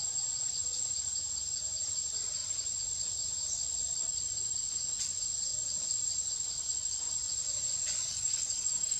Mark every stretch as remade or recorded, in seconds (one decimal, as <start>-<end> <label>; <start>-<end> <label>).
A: 0.0-8.0 recorded; 8.0-9.0 remade